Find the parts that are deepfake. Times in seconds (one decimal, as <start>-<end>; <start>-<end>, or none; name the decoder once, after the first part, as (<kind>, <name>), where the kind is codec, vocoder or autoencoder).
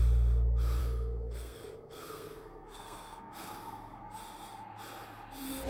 0.8-4.2 (codec, SNAC)